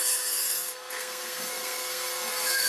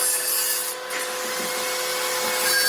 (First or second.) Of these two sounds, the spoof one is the first